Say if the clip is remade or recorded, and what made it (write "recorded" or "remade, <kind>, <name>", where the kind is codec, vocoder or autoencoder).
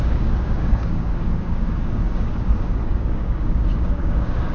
remade, codec, DAC